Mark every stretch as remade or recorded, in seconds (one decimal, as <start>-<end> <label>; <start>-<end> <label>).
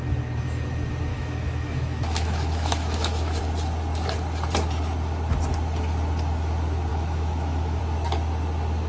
0.0-1.1 recorded; 1.1-3.4 remade; 3.4-6.9 recorded; 6.9-7.8 remade; 7.8-8.9 recorded